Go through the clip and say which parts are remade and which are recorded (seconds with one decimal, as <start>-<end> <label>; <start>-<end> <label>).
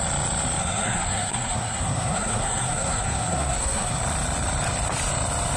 0.0-0.6 recorded; 0.6-4.0 remade; 4.0-5.6 recorded